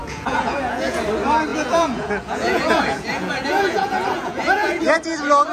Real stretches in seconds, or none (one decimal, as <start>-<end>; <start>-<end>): 1.0-1.5; 4.8-5.5